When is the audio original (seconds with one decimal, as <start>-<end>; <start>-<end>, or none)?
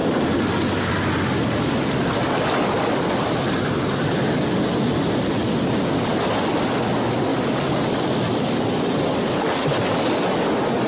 0.9-7.3; 10.4-10.9